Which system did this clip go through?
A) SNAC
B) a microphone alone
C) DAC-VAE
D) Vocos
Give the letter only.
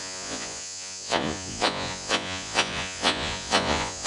D